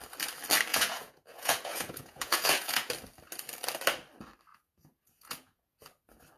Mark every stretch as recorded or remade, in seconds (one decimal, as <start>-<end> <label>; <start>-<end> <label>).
0.0-0.7 recorded; 0.7-2.9 remade; 2.9-4.5 recorded; 4.5-5.8 remade; 5.8-6.4 recorded